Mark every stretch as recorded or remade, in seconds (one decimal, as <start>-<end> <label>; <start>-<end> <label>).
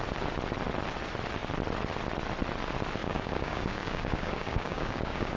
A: 0.0-3.0 recorded; 3.0-5.4 remade